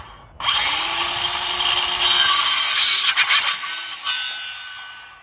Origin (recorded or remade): recorded